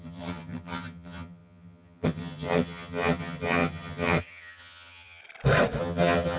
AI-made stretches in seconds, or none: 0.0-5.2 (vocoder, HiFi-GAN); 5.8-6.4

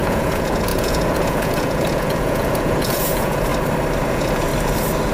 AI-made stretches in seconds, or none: 0.0-3.5 (vocoder, Vocos); 4.1-4.5

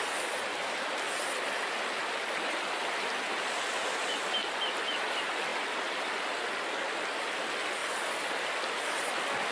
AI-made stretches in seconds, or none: none

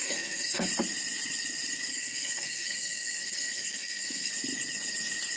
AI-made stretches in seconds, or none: 0.0-0.7 (codec, SNAC); 1.9-4.3

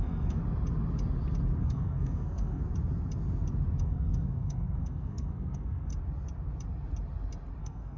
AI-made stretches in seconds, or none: 0.0-0.4 (codec, SNAC); 1.6-2.6; 3.8-5.9; 7.6-8.0

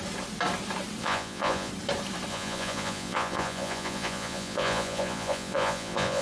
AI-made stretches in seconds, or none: 1.0-1.7 (vocoder, Vocos); 2.3-6.2

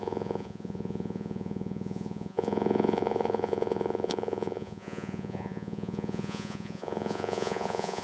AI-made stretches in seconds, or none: 0.0-8.0 (vocoder, Vocos)

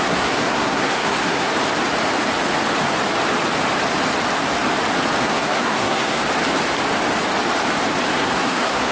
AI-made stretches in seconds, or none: 0.0-1.5 (codec, SNAC); 5.2-6.2; 8.1-8.9